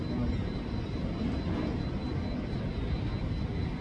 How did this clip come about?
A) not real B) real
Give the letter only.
B